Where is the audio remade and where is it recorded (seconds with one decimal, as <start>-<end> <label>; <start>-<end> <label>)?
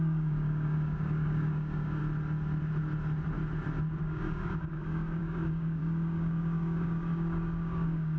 0.0-2.0 remade; 2.0-4.0 recorded; 4.0-8.2 remade